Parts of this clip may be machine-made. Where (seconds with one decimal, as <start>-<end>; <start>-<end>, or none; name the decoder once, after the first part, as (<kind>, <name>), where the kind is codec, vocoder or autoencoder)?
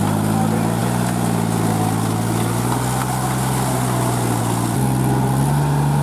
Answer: none